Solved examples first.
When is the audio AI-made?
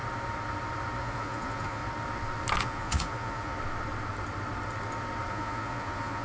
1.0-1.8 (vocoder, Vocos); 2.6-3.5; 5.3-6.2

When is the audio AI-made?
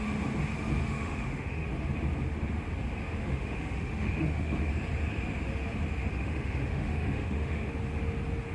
0.8-1.7 (autoencoder, DAC-VAE); 3.2-4.7; 6.1-7.7